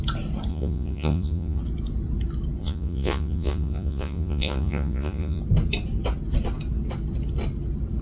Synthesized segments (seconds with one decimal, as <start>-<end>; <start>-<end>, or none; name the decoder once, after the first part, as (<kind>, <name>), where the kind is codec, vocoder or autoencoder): 0.5-1.6 (vocoder, Vocos); 2.6-5.4